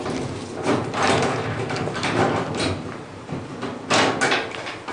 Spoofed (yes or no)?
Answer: no